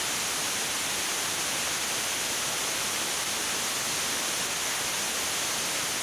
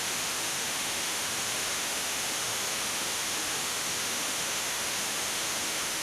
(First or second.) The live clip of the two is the first